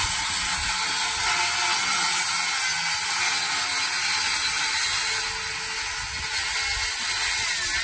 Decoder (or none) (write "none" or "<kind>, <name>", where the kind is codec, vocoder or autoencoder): none